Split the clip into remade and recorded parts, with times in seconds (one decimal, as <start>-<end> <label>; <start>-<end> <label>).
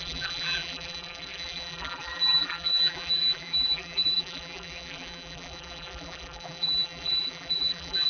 0.0-8.1 remade